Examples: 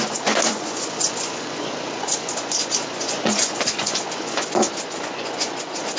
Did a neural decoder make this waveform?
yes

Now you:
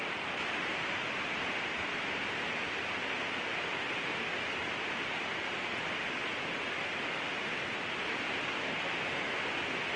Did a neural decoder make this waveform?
no